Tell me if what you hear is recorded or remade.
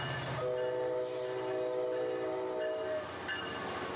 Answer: recorded